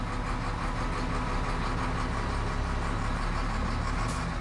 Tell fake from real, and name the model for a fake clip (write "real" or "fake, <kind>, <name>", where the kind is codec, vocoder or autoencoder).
real